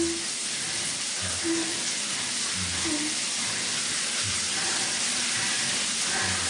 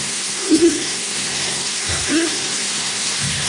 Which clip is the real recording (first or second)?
first